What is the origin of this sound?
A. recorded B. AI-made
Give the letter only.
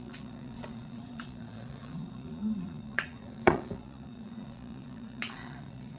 B